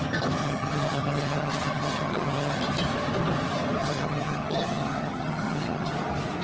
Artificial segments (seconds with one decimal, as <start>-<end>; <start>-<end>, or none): 0.4-2.6; 3.8-5.9